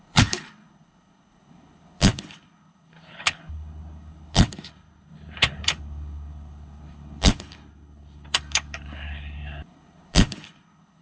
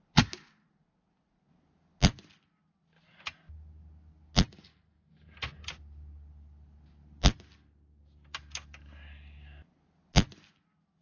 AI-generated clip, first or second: first